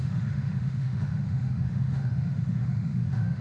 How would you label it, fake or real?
fake